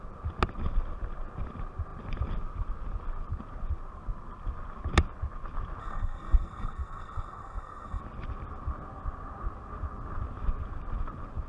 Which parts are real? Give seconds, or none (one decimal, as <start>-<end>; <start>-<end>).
0.0-5.8; 8.0-11.5